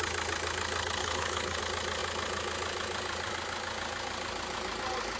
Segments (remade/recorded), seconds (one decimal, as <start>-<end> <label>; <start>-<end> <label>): 0.0-1.0 recorded; 1.0-1.6 remade; 1.6-5.2 recorded